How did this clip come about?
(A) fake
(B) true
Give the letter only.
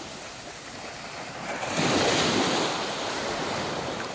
B